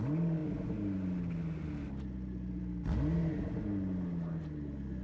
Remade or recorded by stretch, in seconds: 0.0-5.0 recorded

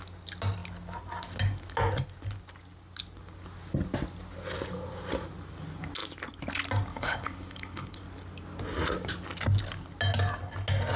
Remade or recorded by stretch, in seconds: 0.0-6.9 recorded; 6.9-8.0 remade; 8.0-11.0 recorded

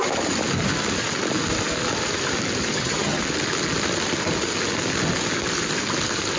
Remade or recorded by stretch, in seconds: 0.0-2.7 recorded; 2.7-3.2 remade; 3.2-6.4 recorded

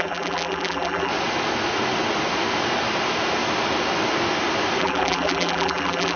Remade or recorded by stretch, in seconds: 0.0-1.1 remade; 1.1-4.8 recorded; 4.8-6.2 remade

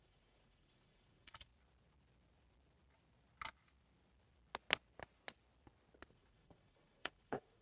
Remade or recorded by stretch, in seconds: 0.0-1.5 remade; 1.5-6.1 recorded; 6.1-7.6 remade